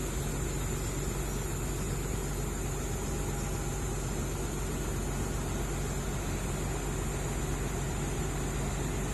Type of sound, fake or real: real